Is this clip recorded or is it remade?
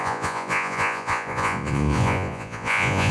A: remade